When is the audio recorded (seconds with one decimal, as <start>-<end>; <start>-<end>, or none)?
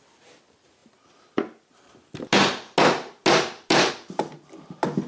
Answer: 0.0-5.1